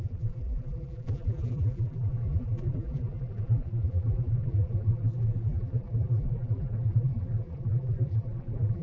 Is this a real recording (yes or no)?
no